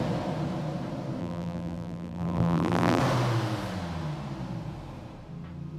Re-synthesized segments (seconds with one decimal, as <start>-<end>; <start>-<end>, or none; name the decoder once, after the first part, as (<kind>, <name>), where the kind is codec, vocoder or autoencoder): 1.2-3.0 (vocoder, BigVGAN v2)